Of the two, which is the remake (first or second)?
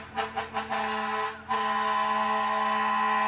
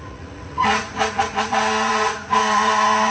second